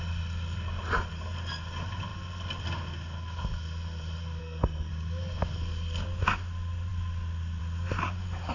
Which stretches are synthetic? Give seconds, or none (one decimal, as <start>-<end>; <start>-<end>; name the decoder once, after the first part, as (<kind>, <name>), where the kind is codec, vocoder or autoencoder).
4.4-4.9 (codec, SNAC)